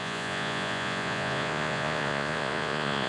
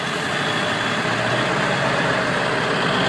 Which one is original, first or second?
second